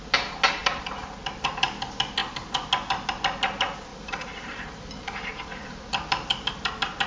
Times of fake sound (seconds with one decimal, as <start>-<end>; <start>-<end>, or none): 3.9-5.9